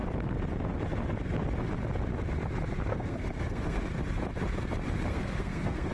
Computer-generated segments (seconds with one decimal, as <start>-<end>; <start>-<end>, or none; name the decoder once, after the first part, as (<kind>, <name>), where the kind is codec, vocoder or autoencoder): 2.9-3.8 (codec, SNAC); 5.1-5.9